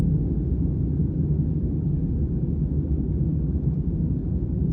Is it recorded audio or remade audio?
remade